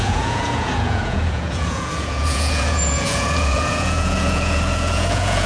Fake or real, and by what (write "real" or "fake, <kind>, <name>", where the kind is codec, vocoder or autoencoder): fake, vocoder, Vocos